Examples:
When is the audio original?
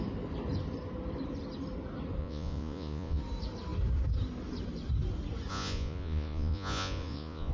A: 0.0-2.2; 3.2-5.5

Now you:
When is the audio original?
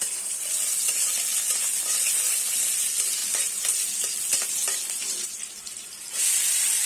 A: 0.0-6.9